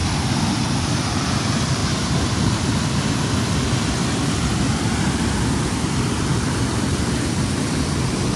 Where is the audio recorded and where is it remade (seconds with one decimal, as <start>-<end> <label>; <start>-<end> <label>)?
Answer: 0.0-8.4 recorded